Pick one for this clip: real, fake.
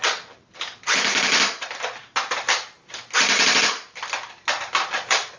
real